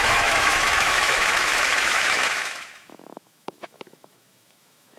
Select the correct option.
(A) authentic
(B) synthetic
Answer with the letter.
B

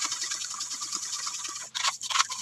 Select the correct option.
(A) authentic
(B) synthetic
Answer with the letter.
A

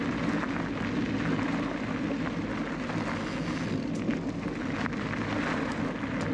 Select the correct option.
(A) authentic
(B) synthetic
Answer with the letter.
A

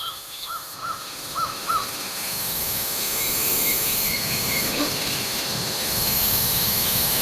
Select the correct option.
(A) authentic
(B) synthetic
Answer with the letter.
B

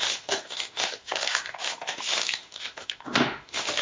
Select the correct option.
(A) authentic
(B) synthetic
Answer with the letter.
B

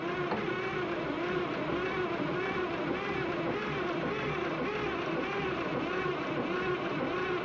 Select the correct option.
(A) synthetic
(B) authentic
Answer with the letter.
B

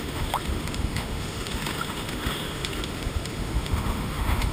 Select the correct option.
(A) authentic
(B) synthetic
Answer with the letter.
B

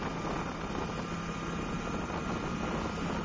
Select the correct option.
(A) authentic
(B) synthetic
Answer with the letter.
A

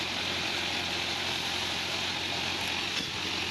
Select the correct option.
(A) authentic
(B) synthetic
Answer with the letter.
A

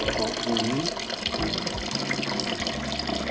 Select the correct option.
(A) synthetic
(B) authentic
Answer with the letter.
B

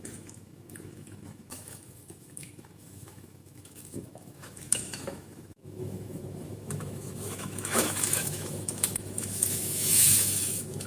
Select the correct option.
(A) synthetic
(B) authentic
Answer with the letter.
A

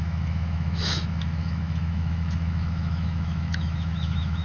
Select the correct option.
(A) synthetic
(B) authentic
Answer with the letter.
A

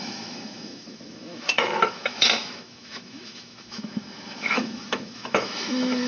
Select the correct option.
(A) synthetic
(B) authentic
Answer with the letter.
A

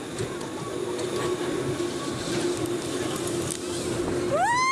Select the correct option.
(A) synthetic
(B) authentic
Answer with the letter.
B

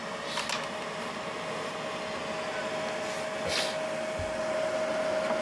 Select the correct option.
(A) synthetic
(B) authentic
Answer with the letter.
B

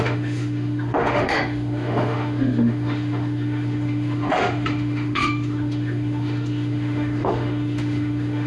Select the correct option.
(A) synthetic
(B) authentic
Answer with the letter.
A